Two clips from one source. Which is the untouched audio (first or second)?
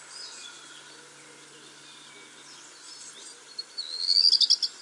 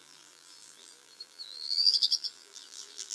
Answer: first